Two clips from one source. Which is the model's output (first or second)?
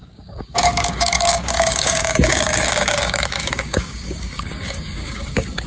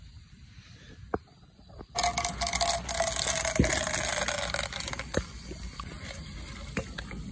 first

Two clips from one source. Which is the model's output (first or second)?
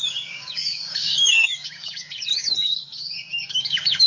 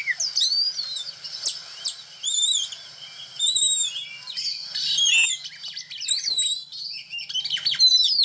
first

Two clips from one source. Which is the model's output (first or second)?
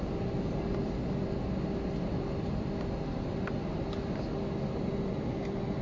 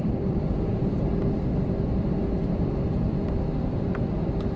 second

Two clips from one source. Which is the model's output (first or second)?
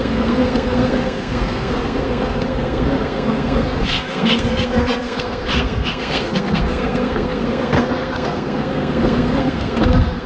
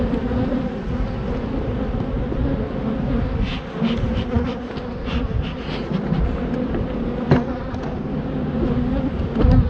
first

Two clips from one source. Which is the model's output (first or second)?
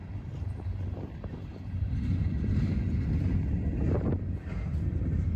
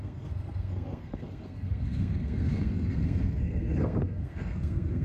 second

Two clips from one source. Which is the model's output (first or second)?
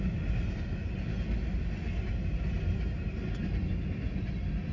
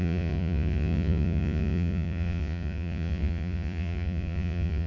second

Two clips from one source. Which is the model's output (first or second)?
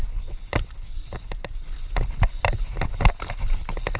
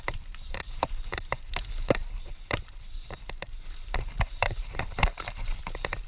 second